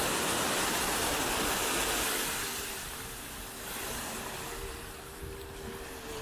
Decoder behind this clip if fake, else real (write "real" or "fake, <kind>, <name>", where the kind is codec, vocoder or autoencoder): real